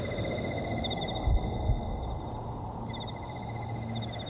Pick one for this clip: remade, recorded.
recorded